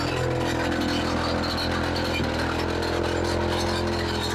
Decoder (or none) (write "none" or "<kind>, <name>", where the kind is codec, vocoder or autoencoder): none